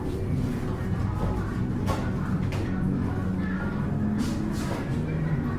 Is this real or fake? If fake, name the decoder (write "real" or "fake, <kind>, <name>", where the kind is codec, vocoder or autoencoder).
real